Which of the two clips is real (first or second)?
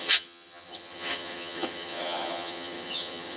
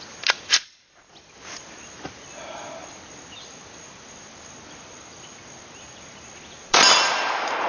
second